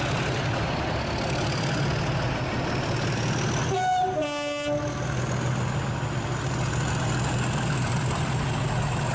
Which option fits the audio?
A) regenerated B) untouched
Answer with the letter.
B